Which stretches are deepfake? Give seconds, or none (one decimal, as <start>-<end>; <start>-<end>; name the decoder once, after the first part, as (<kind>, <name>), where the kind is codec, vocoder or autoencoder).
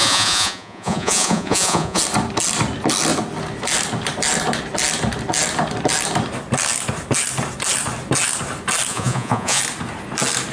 0.0-2.0 (vocoder, Vocos); 8.9-9.6